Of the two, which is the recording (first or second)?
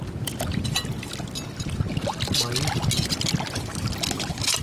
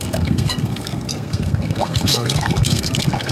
first